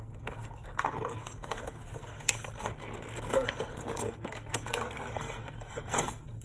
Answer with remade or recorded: remade